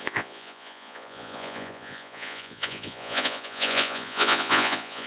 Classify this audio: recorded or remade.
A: remade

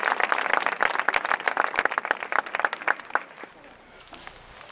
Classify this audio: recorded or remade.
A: recorded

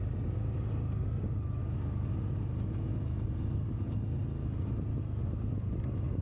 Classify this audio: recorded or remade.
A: recorded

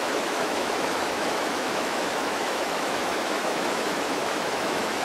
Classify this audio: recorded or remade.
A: remade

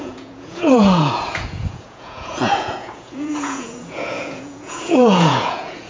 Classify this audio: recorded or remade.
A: remade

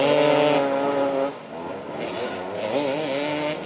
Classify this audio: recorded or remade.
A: recorded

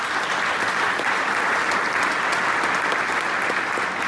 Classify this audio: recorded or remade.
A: recorded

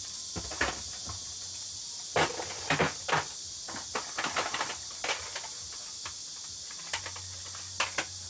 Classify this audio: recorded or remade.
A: recorded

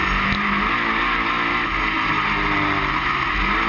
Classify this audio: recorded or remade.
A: recorded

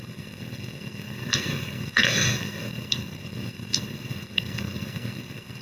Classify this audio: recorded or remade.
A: remade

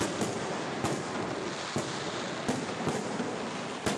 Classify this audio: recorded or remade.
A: recorded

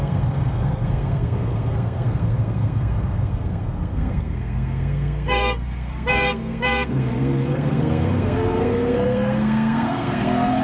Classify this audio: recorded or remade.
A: remade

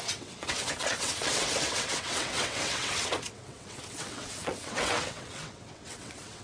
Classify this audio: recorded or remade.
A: remade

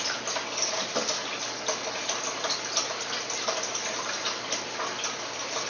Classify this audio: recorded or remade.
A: recorded